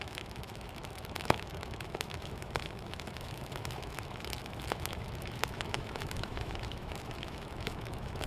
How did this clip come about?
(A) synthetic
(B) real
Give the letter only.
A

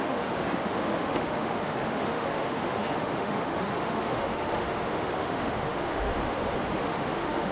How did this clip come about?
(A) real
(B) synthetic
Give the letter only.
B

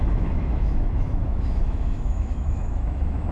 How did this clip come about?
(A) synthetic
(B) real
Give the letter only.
A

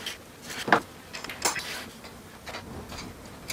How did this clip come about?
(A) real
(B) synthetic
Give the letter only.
A